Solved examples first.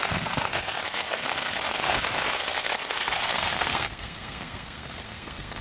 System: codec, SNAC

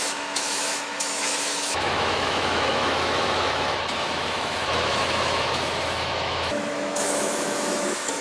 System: autoencoder, DAC-VAE